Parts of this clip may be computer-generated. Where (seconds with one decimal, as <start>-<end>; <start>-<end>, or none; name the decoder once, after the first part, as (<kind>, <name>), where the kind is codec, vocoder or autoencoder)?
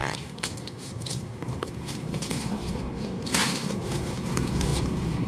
0.0-5.3 (codec, SNAC)